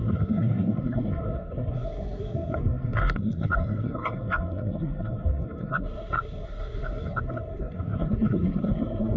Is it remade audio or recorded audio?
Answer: remade